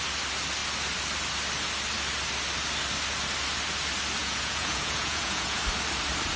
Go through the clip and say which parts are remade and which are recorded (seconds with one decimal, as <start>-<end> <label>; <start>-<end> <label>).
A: 0.0-4.2 recorded; 4.2-5.6 remade; 5.6-6.4 recorded